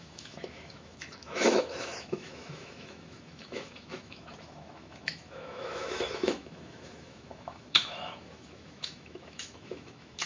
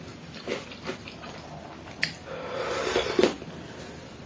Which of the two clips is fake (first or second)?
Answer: first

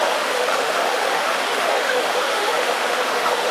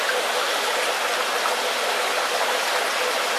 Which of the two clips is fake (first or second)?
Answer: first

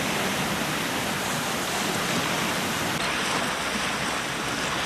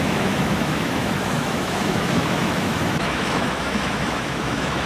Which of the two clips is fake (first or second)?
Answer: second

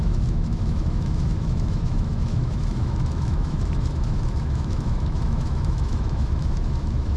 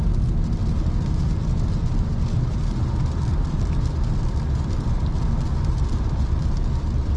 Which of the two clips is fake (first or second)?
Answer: first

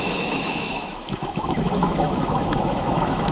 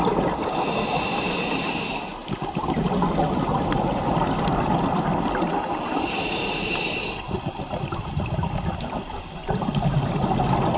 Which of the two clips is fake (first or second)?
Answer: first